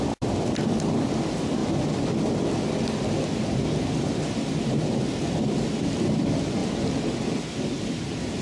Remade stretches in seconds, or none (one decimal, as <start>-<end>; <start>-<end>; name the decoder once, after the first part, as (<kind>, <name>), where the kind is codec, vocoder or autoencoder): 0.0-1.6 (vocoder, BigVGAN v2); 3.9-8.4